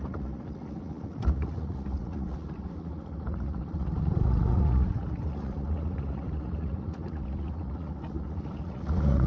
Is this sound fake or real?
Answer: fake